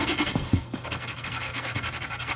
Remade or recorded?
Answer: remade